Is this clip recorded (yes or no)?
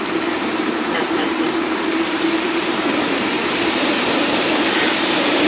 no